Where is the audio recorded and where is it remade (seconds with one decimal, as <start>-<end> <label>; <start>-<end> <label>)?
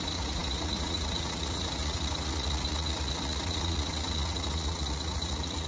0.0-5.7 remade